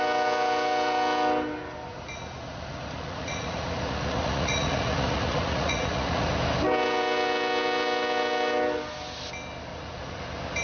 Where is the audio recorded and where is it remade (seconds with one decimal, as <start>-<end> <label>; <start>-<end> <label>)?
0.0-1.9 recorded; 1.9-6.3 remade; 6.3-9.7 recorded; 9.7-10.2 remade; 10.2-10.6 recorded